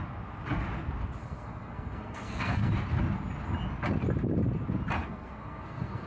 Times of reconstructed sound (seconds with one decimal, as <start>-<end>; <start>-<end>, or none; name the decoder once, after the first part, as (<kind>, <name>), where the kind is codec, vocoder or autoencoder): 1.2-2.7 (codec, SNAC); 5.0-6.1